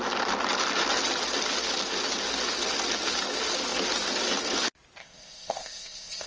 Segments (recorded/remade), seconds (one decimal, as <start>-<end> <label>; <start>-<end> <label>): 0.0-5.0 recorded; 5.0-6.3 remade